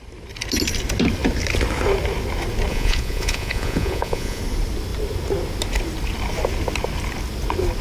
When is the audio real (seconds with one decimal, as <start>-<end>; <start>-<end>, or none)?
0.0-2.7; 4.4-7.8